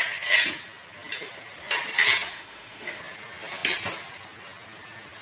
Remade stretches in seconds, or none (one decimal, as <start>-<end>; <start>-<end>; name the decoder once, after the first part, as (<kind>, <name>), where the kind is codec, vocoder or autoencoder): 2.3-3.0 (autoencoder, DAC-VAE)